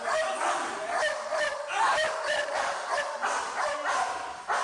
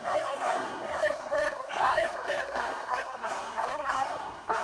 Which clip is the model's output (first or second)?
second